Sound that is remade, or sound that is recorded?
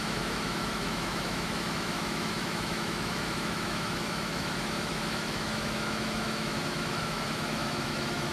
remade